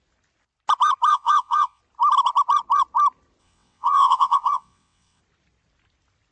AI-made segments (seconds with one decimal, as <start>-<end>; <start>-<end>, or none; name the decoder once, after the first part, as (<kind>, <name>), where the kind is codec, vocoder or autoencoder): 1.1-1.8 (vocoder, WaveNeXt); 3.4-5.2